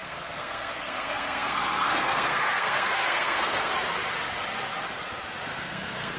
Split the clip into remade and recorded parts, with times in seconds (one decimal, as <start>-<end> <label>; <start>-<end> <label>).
0.0-3.7 remade; 3.7-5.5 recorded; 5.5-6.2 remade